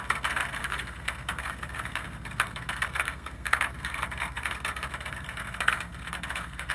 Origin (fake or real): fake